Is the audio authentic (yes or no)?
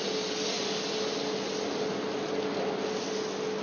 yes